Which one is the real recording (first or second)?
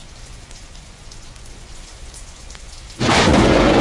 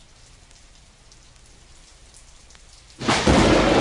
second